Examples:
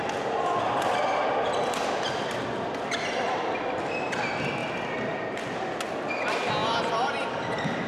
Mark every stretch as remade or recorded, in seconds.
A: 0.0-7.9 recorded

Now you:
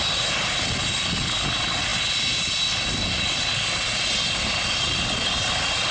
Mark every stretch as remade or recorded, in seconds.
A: 0.0-5.9 recorded

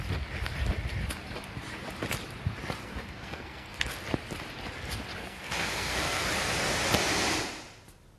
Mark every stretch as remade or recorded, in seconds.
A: 0.0-2.8 recorded; 2.8-3.9 remade; 3.9-5.2 recorded; 5.2-6.3 remade; 6.3-8.2 recorded

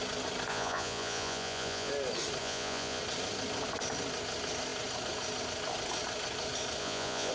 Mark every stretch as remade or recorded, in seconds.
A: 0.0-0.5 recorded; 0.5-1.9 remade; 1.9-2.4 recorded; 2.4-3.0 remade; 3.0-6.8 recorded; 6.8-7.3 remade

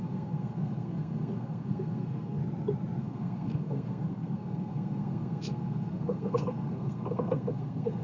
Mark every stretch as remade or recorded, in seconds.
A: 0.0-2.4 remade; 2.4-3.0 recorded; 3.0-8.0 remade

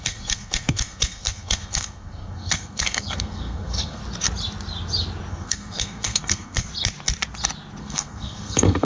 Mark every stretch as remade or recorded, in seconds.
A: 0.0-4.0 remade; 4.0-5.3 recorded; 5.3-6.7 remade; 6.7-7.8 recorded; 7.8-8.8 remade

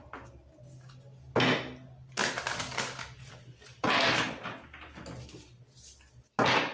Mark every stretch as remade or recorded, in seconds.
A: 0.0-6.7 recorded